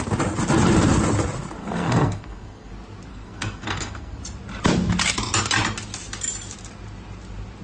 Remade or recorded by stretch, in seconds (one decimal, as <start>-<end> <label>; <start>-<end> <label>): 0.0-1.6 recorded; 1.6-2.7 remade; 2.7-3.1 recorded; 3.1-4.2 remade; 4.2-7.6 recorded